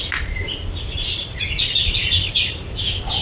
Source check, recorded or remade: recorded